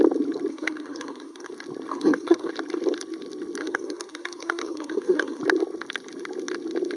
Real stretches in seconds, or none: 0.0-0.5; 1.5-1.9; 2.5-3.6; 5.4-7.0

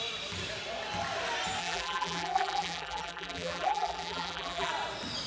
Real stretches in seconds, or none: 0.0-1.6; 4.7-5.3